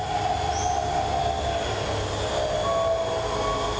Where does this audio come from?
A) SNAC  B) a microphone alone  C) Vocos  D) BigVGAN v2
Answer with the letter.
B